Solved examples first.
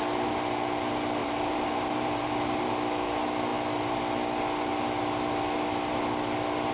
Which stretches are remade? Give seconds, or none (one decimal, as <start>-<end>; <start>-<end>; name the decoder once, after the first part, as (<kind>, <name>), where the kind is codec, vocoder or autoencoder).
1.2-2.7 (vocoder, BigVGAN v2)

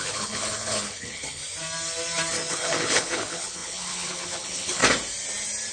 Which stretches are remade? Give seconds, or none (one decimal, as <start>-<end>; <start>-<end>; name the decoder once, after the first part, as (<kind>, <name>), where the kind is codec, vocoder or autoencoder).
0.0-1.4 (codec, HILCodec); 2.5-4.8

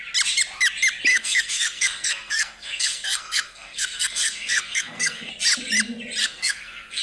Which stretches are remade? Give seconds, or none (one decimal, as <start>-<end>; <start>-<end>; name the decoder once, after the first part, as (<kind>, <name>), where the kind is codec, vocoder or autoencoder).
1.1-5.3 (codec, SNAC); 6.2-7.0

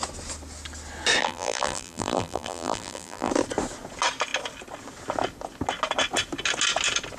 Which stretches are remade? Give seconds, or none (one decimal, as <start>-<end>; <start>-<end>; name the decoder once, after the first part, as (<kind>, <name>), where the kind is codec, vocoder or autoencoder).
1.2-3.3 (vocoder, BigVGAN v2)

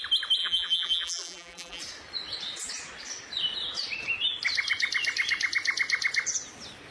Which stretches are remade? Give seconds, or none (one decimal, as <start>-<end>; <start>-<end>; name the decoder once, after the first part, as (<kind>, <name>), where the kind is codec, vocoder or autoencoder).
0.4-1.8 (vocoder, BigVGAN v2)

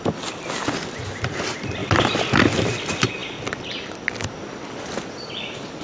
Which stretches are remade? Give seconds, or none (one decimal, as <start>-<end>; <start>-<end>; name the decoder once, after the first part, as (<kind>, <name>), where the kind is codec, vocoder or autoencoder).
none

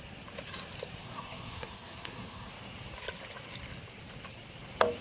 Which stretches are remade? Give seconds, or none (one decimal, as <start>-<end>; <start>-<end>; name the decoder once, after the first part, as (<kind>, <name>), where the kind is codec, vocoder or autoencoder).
1.0-2.5 (codec, SNAC)

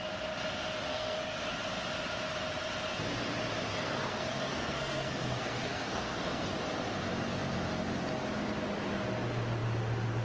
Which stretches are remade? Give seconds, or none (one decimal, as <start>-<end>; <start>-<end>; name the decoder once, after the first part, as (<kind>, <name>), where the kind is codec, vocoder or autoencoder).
0.9-1.5 (codec, SNAC); 3.7-6.5